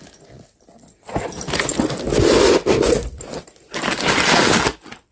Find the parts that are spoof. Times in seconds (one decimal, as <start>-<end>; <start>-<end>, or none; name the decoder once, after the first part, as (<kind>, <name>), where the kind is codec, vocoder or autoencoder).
none